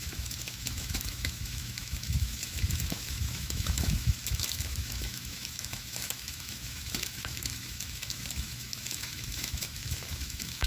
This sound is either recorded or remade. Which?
remade